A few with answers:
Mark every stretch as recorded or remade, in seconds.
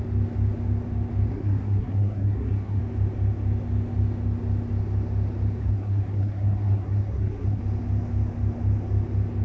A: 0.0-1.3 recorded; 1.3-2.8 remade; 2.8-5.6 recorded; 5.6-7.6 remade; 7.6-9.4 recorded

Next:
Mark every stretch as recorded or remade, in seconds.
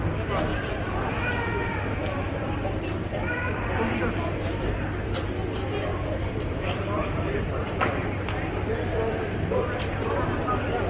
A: 0.0-0.5 recorded; 0.5-4.5 remade; 4.5-5.9 recorded; 5.9-7.7 remade; 7.7-10.9 recorded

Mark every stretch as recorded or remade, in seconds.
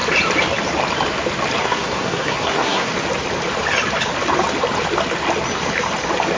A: 0.0-1.6 recorded; 1.6-2.9 remade; 2.9-6.4 recorded